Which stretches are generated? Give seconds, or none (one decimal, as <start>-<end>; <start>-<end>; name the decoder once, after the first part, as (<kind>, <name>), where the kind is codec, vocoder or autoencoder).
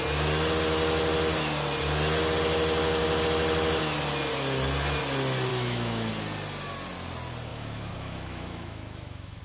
5.5-6.1 (autoencoder, DAC-VAE); 7.5-9.4